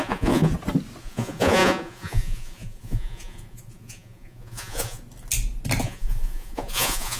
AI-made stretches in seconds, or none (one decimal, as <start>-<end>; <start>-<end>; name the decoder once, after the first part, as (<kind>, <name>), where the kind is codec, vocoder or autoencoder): 0.0-0.5 (vocoder, Vocos); 1.0-5.0; 5.8-7.2